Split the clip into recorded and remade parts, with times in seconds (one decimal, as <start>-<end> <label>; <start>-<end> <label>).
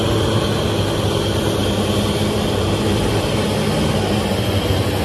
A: 0.0-5.0 recorded